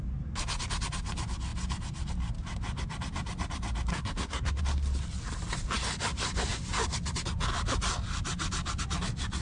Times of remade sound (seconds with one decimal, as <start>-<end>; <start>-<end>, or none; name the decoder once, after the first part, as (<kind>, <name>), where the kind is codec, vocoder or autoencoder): 3.9-4.6 (codec, SNAC)